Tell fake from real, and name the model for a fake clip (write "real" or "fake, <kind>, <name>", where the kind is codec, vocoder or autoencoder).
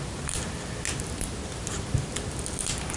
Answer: real